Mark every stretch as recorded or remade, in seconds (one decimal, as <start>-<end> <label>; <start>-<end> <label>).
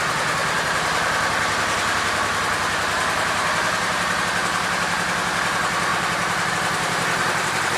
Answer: 0.0-0.4 recorded; 0.4-4.2 remade; 4.2-5.9 recorded; 5.9-6.5 remade; 6.5-7.8 recorded